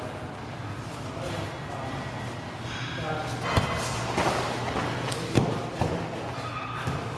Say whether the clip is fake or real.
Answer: real